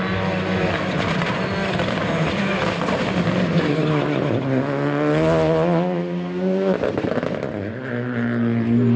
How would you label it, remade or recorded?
recorded